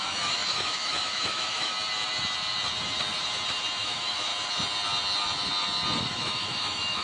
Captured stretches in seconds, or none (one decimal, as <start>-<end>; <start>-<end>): 1.7-3.8; 4.3-6.0